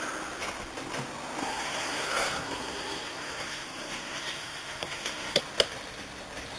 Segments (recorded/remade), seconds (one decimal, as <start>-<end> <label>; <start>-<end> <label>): 0.0-1.4 recorded; 1.4-5.4 remade; 5.4-6.6 recorded